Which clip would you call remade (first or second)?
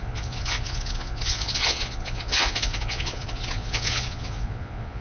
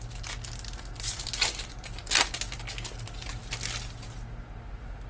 first